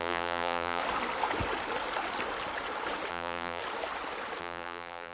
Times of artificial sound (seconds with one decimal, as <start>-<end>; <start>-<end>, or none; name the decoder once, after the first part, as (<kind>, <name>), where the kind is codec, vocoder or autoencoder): 0.0-0.8 (vocoder, BigVGAN v2); 3.1-3.6; 4.4-5.1